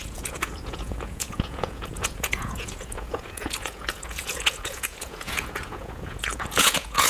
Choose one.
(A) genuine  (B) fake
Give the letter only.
B